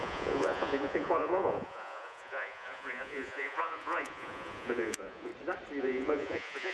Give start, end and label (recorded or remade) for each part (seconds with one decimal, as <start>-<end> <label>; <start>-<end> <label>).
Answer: 0.0-5.3 remade; 5.3-5.8 recorded; 5.8-6.7 remade